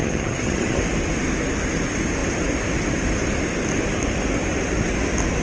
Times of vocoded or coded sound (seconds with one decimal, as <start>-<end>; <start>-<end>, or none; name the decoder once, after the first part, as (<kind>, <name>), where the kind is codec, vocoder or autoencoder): 0.0-0.8 (vocoder, HiFi-GAN)